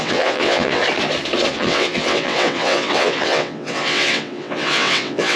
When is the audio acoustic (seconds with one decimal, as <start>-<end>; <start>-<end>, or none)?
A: 0.8-1.5